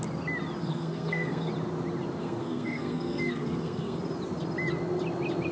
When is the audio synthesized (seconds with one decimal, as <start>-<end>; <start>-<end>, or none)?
0.6-1.5; 2.2-4.0